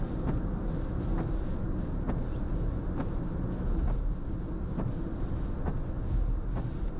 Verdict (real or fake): real